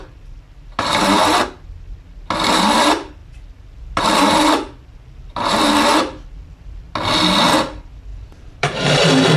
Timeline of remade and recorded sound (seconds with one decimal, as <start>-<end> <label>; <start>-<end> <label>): 0.0-8.1 recorded; 8.1-8.8 remade; 8.8-9.4 recorded